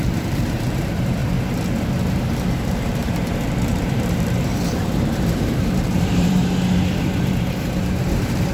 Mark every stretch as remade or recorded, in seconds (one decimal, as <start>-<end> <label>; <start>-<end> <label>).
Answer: 0.0-1.2 remade; 1.2-2.1 recorded; 2.1-6.4 remade; 6.4-7.0 recorded; 7.0-8.5 remade